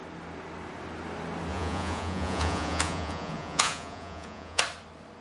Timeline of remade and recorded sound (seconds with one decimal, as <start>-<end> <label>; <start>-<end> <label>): 0.0-1.5 recorded; 1.5-4.6 remade; 4.6-5.2 recorded